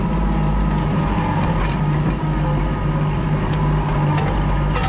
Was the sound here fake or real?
real